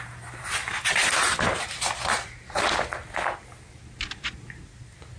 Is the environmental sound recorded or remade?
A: recorded